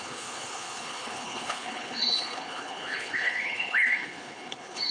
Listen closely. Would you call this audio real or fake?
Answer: fake